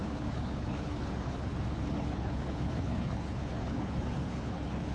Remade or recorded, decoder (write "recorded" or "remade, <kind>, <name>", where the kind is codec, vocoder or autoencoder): remade, codec, HILCodec